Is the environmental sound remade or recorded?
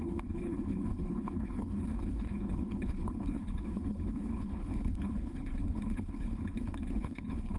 remade